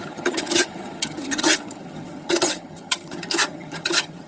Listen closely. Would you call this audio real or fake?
fake